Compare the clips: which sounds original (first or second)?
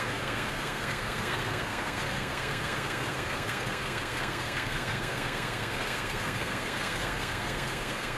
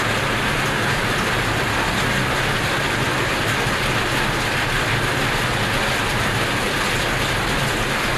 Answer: second